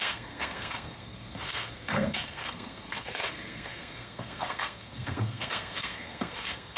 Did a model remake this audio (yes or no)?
yes